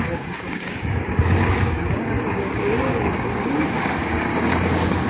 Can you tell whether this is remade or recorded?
remade